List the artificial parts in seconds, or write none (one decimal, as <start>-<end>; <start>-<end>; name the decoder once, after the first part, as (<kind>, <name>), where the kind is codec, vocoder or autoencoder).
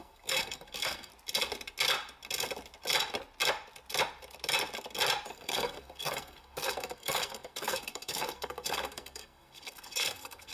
0.0-1.1 (codec, SNAC); 5.3-10.5